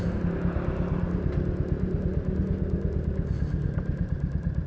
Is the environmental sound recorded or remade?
recorded